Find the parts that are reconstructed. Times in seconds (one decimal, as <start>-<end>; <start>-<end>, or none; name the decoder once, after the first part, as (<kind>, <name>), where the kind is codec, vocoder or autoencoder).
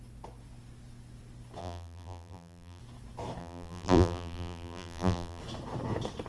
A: 1.6-2.8 (vocoder, BigVGAN v2); 3.4-5.4